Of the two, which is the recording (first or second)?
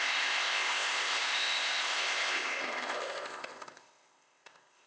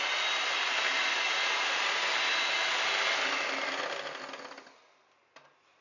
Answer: second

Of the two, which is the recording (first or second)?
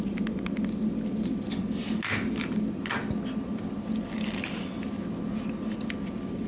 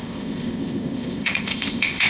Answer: first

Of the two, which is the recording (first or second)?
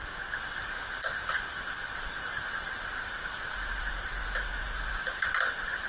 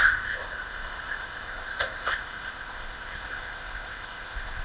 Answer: first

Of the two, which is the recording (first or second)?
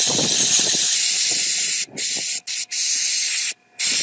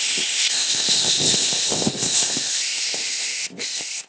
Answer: first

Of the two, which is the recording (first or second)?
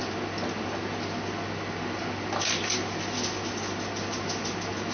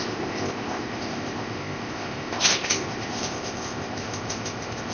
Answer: first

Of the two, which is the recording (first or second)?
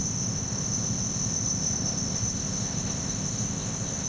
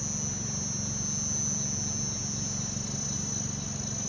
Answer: second